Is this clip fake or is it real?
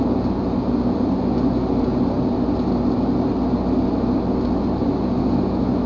real